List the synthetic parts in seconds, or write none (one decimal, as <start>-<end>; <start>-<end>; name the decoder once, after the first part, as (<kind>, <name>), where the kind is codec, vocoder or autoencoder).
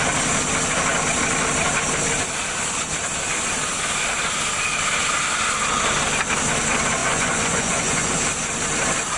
7.0-8.1 (vocoder, Vocos)